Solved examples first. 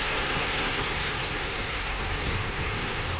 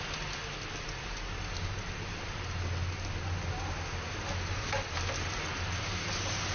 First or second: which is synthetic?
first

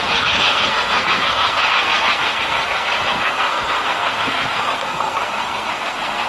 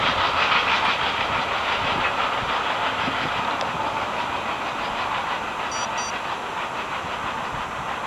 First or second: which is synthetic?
first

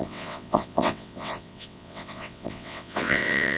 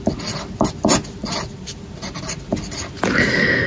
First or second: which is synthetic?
first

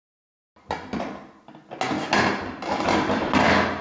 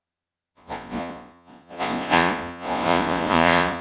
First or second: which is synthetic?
second